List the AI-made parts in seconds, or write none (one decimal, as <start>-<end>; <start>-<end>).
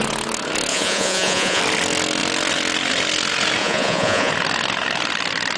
0.7-1.6; 3.6-4.3